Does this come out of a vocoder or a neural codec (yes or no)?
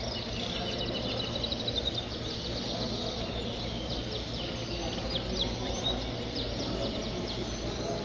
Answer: no